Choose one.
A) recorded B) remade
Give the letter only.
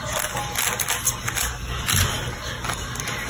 A